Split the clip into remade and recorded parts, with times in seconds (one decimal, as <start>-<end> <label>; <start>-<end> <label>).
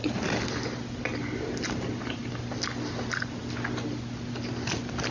0.0-5.1 recorded